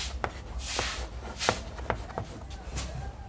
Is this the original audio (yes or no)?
yes